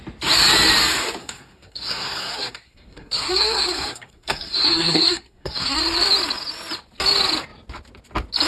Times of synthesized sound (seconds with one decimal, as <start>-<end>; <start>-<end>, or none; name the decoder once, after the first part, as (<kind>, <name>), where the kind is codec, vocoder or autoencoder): 1.2-5.8 (codec, SNAC)